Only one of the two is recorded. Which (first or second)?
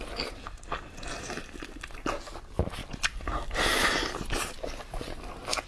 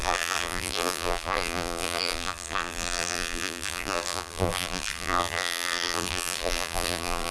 first